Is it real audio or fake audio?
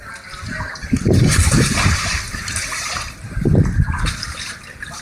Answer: fake